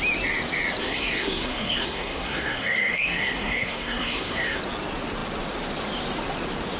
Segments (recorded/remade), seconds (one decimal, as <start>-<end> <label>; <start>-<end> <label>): 0.0-0.8 recorded; 0.8-4.6 remade; 4.6-6.8 recorded